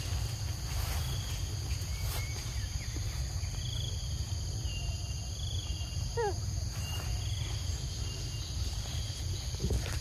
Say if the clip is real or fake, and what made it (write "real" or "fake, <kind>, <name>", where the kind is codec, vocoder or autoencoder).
real